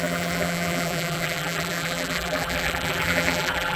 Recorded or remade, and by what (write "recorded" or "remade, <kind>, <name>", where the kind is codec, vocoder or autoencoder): remade, vocoder, BigVGAN v2